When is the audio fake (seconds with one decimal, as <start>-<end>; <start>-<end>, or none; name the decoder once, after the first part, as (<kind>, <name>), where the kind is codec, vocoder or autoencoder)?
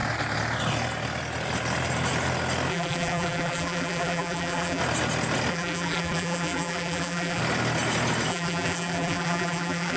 2.7-4.8 (vocoder, BigVGAN v2); 5.5-7.4; 8.3-10.0